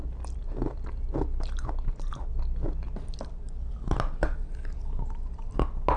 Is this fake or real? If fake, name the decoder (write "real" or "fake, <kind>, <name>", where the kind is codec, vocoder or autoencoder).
real